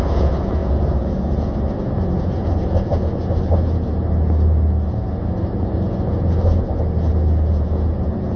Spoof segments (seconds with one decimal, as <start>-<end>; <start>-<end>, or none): none

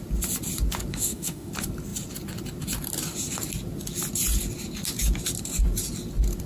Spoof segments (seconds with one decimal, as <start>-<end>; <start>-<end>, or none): 0.9-1.5

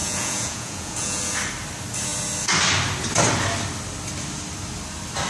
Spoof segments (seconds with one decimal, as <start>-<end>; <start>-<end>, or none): 0.0-1.2

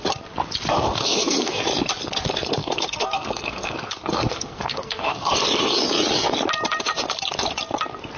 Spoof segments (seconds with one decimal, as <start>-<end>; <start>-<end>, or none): 1.0-1.6; 2.6-5.3